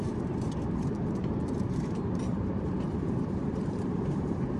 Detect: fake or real fake